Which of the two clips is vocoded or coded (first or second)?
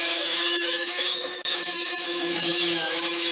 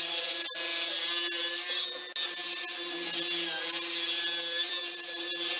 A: first